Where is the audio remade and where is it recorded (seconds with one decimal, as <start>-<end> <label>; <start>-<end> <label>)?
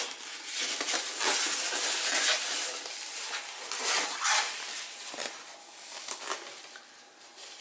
0.0-5.6 recorded; 5.6-6.2 remade; 6.2-7.6 recorded